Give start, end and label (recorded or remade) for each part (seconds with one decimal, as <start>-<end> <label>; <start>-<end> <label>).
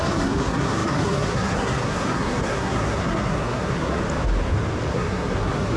0.0-4.0 remade; 4.0-4.9 recorded; 4.9-5.8 remade